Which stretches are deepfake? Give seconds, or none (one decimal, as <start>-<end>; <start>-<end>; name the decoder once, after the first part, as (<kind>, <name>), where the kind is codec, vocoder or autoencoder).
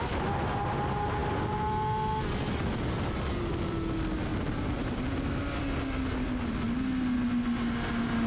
4.3-5.0 (vocoder, BigVGAN v2)